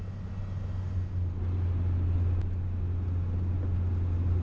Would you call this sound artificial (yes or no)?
no